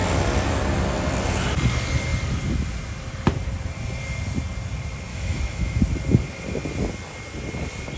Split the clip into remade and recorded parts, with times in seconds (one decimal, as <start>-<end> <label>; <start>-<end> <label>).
0.0-5.1 recorded; 5.1-5.8 remade; 5.8-8.0 recorded